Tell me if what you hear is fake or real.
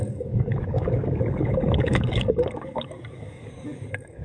fake